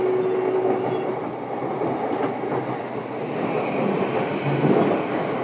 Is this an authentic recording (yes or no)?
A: yes